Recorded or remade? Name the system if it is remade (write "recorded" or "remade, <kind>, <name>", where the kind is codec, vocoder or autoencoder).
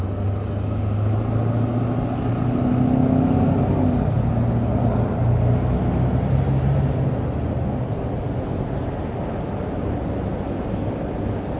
recorded